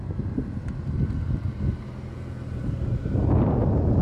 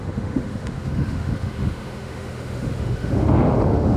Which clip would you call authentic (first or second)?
first